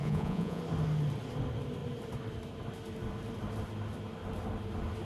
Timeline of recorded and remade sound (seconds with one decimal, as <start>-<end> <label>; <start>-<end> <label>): 0.0-0.6 remade; 0.6-5.0 recorded